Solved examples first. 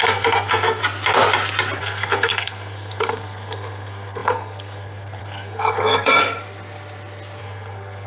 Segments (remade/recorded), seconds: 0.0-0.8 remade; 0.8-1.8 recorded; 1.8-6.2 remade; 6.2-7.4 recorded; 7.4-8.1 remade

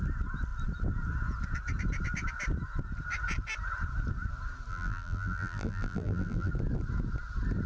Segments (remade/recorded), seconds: 0.0-4.7 recorded; 4.7-6.5 remade; 6.5-7.7 recorded

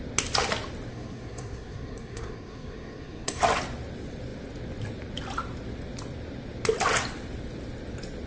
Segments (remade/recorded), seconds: 0.0-0.9 recorded; 0.9-3.4 remade; 3.4-8.3 recorded

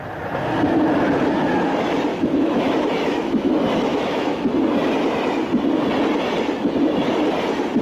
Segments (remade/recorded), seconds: 0.0-2.1 recorded; 2.1-3.5 remade; 3.5-3.9 recorded; 3.9-4.5 remade; 4.5-7.8 recorded

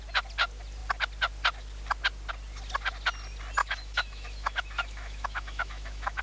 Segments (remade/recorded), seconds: 0.0-3.6 recorded; 3.6-6.2 remade

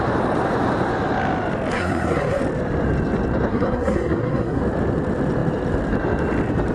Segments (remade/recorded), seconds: 0.0-1.7 recorded; 1.7-2.4 remade; 2.4-3.5 recorded; 3.5-4.6 remade; 4.6-6.7 recorded

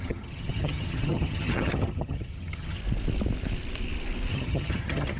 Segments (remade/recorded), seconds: 0.0-2.8 remade; 2.8-4.3 recorded; 4.3-5.2 remade

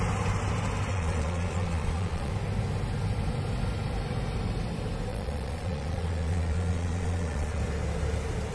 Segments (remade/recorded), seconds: 0.0-0.9 recorded; 0.9-2.3 remade; 2.3-5.1 recorded; 5.1-7.6 remade; 7.6-8.5 recorded